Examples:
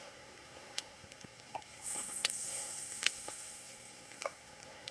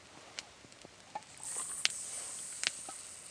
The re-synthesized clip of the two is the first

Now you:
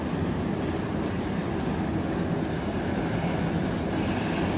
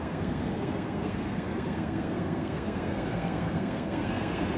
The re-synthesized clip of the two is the second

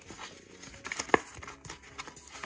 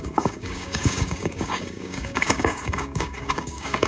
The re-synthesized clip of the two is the second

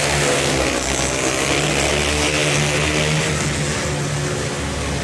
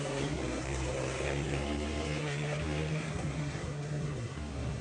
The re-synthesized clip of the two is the second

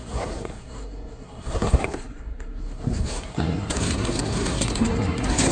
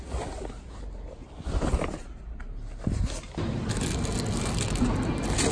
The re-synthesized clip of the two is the first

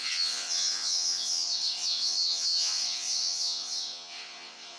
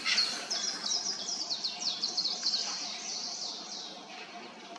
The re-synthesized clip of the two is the first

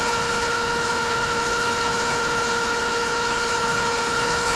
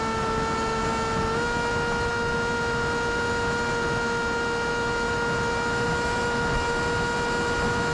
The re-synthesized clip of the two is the first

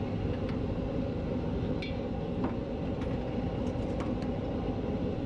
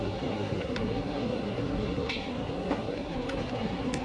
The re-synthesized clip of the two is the second